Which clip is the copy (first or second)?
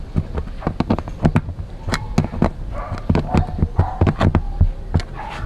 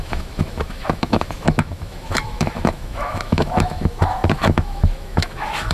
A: second